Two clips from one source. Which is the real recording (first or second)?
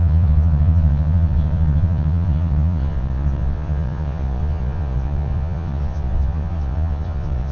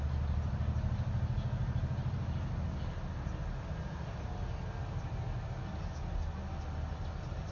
second